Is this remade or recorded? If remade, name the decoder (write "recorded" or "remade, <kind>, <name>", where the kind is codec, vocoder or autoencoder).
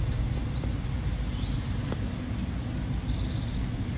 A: recorded